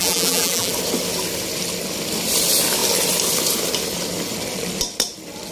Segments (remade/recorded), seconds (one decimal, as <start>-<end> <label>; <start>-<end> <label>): 0.0-0.7 remade; 0.7-5.5 recorded